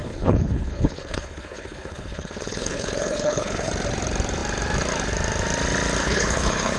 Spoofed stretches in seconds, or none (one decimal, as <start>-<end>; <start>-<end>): 0.0-3.7; 6.0-6.8